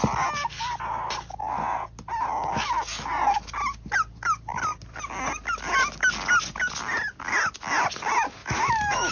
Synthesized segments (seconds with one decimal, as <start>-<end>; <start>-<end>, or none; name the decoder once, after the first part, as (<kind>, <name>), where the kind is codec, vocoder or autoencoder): 8.4-9.1 (autoencoder, DAC-VAE)